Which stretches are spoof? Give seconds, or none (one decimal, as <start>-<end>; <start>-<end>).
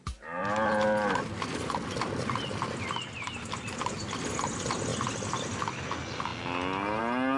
0.4-4.3; 4.9-5.8